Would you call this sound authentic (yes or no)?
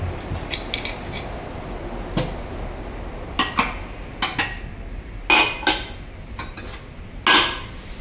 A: yes